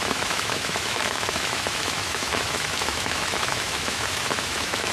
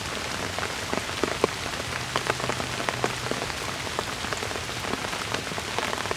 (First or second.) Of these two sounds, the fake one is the first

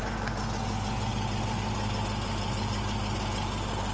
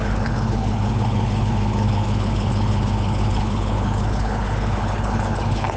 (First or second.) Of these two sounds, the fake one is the second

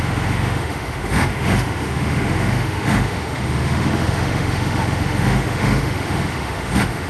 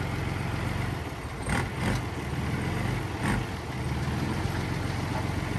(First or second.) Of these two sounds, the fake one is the first